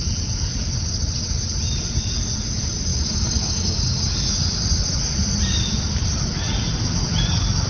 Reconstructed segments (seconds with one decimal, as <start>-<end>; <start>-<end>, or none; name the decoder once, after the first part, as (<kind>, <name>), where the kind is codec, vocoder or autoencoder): none